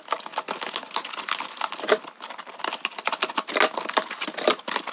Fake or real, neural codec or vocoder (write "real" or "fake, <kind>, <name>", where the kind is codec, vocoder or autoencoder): real